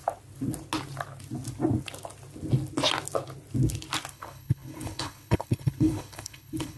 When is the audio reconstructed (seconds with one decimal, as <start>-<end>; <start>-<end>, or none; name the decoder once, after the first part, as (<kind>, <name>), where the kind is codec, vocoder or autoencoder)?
4.1-6.8 (codec, HILCodec)